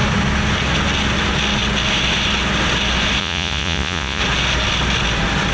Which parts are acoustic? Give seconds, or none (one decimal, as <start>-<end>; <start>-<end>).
0.0-3.2; 4.2-5.5